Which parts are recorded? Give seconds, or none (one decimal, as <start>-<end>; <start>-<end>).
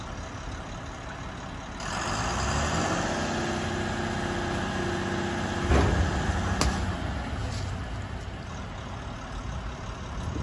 0.0-10.4